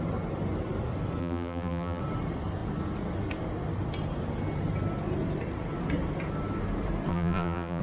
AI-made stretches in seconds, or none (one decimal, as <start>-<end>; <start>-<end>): 1.2-2.0; 7.1-7.8

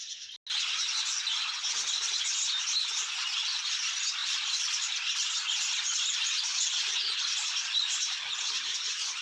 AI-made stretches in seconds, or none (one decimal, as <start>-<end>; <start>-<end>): 4.2-5.3; 6.5-8.3

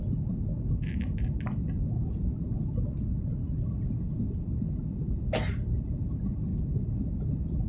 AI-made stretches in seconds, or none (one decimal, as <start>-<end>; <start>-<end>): 0.0-0.5; 5.1-6.5; 7.2-7.7

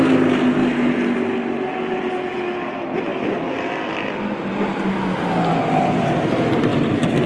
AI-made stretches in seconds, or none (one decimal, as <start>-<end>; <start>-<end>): 6.7-7.3